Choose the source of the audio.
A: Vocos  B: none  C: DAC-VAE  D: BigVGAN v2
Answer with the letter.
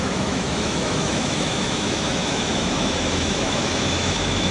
C